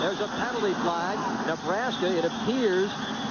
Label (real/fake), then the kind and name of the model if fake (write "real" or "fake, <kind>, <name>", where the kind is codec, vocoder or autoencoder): real